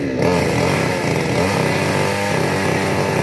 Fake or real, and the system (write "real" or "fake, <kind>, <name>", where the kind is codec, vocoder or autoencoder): real